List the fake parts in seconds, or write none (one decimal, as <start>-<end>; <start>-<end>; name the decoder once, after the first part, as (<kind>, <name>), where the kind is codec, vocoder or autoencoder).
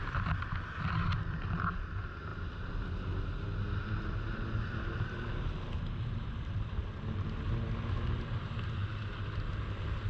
none